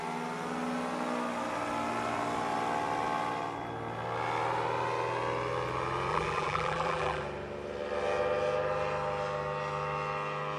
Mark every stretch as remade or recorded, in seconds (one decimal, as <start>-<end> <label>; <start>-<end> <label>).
0.0-6.1 recorded; 6.1-7.2 remade; 7.2-10.6 recorded

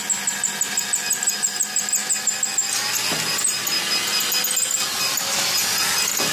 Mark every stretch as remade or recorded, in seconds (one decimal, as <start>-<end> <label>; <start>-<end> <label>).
0.0-6.3 recorded

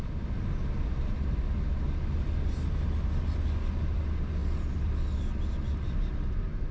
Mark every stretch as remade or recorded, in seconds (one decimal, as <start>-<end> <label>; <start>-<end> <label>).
0.0-6.7 recorded

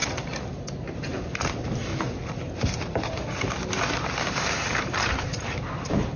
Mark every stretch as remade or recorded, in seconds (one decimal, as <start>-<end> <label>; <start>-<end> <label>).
0.0-0.9 recorded; 0.9-1.9 remade; 1.9-4.3 recorded; 4.3-6.2 remade

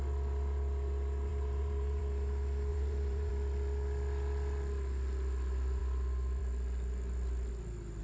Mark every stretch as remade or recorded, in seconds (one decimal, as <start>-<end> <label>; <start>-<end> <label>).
0.0-1.3 recorded; 1.3-2.0 remade; 2.0-2.7 recorded; 2.7-3.3 remade; 3.3-8.0 recorded

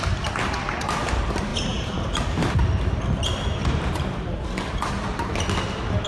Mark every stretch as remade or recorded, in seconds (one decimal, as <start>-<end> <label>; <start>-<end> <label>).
0.0-1.5 recorded; 1.5-2.6 remade; 2.6-3.6 recorded; 3.6-4.4 remade; 4.4-6.1 recorded